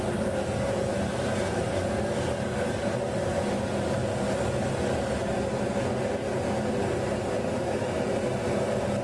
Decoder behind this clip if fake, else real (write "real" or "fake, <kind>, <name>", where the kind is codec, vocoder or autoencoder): real